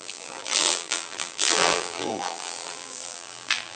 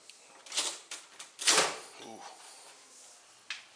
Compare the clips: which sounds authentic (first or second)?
second